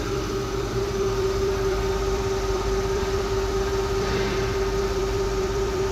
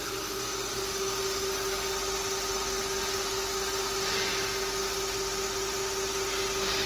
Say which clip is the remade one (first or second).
first